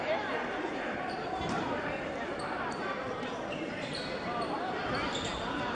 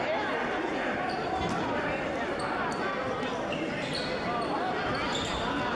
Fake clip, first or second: first